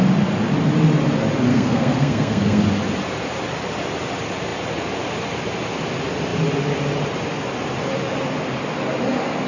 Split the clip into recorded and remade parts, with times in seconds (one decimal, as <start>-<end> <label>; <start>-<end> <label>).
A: 0.0-1.5 recorded; 1.5-2.6 remade; 2.6-9.5 recorded